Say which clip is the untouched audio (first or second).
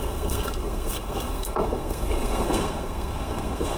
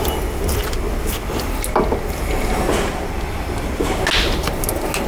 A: second